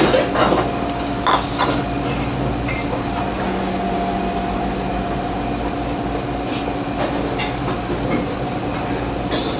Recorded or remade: recorded